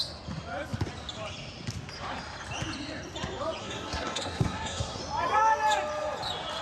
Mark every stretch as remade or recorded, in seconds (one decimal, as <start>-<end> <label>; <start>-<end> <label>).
0.0-3.6 recorded; 3.6-5.0 remade; 5.0-6.6 recorded